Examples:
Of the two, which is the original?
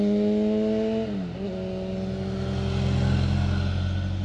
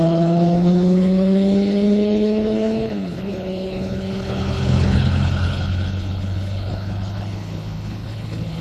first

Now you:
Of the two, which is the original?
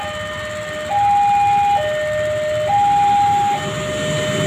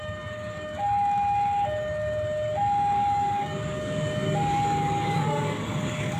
first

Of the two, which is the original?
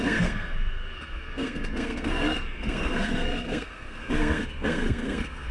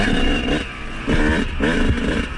second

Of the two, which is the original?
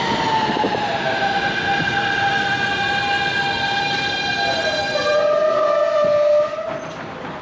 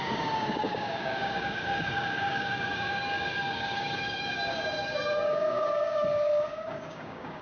first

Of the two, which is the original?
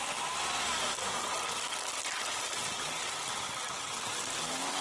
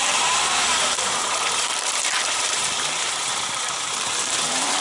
first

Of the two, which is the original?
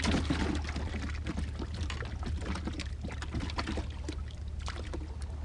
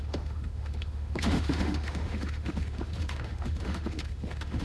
first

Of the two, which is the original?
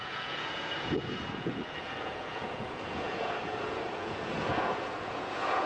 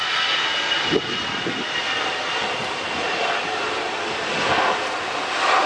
second